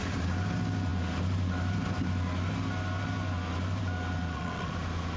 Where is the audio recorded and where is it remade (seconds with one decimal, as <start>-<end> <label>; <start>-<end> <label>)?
0.0-4.2 recorded; 4.2-4.7 remade; 4.7-5.2 recorded

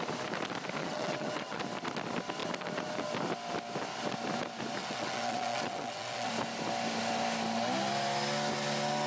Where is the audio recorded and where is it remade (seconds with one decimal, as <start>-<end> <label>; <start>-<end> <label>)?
0.0-0.8 recorded; 0.8-1.6 remade; 1.6-4.8 recorded; 4.8-6.3 remade; 6.3-9.1 recorded

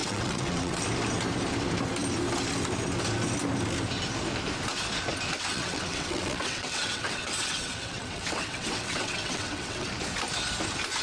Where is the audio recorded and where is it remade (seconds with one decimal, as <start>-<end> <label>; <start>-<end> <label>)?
0.0-0.8 remade; 0.8-5.5 recorded; 5.5-9.9 remade; 9.9-11.0 recorded

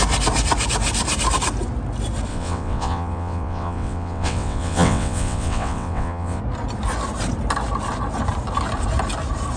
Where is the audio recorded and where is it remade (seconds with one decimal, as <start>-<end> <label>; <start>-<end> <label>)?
0.0-2.3 recorded; 2.3-6.4 remade; 6.4-9.6 recorded

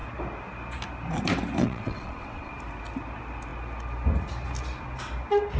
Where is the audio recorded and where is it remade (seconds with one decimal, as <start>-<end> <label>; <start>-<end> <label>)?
0.0-1.6 recorded; 1.6-2.5 remade; 2.5-5.6 recorded

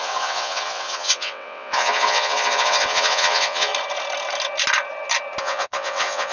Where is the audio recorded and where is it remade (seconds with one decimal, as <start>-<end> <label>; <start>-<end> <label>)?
0.0-3.7 remade; 3.7-5.4 recorded; 5.4-6.3 remade

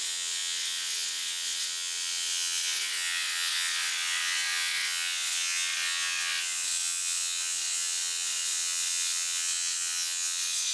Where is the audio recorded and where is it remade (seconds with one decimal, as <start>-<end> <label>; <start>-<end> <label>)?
0.0-10.7 remade